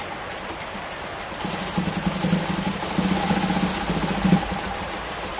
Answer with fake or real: real